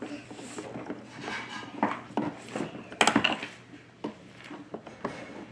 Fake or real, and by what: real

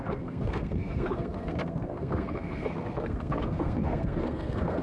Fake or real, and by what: fake, codec, SNAC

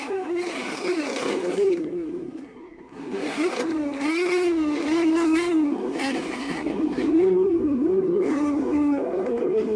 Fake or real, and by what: fake, codec, SNAC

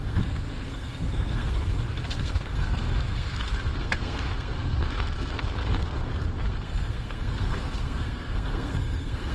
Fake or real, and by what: fake, codec, SNAC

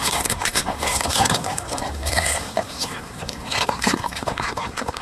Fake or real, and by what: fake, codec, SNAC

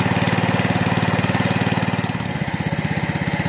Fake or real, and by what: real